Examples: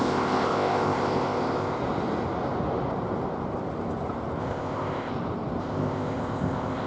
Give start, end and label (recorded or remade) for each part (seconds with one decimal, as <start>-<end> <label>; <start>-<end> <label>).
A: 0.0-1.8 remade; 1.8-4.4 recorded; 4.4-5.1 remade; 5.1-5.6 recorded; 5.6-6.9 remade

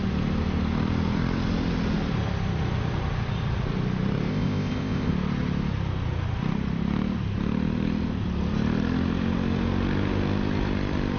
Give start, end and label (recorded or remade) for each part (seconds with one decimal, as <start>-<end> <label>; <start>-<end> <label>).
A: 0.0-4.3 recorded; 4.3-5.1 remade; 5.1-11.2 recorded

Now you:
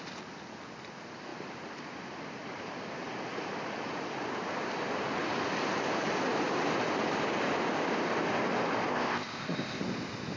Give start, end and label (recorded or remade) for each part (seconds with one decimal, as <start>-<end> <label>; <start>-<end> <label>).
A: 0.0-8.9 recorded; 8.9-9.8 remade; 9.8-10.4 recorded